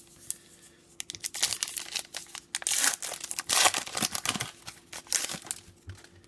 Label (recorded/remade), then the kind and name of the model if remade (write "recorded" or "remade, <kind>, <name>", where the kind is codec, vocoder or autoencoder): recorded